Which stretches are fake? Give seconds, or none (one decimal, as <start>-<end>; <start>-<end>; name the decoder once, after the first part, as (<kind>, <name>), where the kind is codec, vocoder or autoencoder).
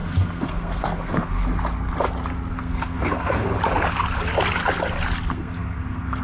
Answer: 0.0-1.4 (codec, SNAC); 2.5-3.5; 5.3-6.2